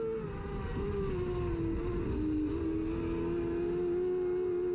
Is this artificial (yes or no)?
no